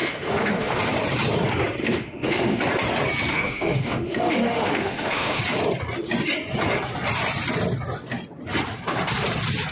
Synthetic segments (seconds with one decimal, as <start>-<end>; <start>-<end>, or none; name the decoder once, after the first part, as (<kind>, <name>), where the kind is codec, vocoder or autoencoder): 0.0-0.8 (autoencoder, DAC-VAE); 1.8-2.6; 3.3-5.4